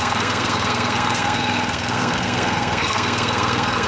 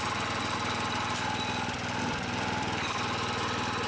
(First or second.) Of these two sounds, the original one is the second